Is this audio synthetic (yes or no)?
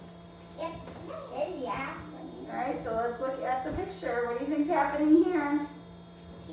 no